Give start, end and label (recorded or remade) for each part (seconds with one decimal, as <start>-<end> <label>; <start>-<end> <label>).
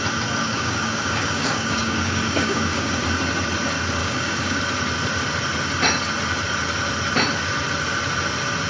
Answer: 0.0-0.4 recorded; 0.4-3.0 remade; 3.0-4.0 recorded; 4.0-4.6 remade; 4.6-8.7 recorded